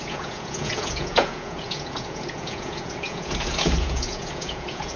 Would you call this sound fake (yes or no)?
yes